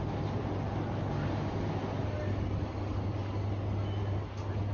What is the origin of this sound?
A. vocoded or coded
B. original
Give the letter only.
B